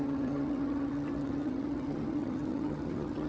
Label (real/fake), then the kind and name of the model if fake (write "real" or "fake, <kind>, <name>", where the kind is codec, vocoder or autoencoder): fake, vocoder, HiFi-GAN